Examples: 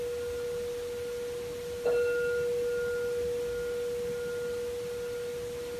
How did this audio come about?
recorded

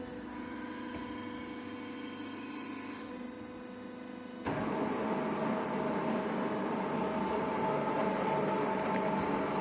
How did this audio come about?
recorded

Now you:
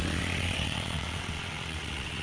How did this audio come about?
remade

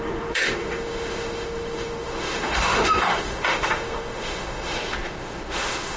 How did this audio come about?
remade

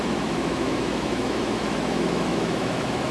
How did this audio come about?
remade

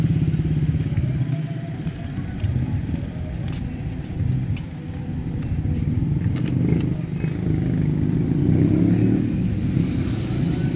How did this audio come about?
recorded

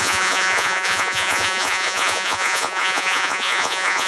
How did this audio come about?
remade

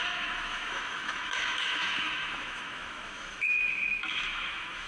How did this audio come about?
remade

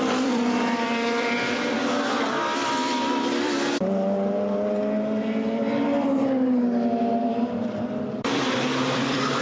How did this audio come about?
remade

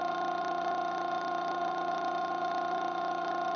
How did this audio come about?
remade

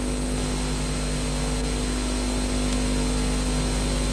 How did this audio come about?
recorded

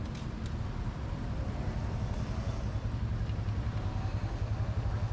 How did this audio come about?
recorded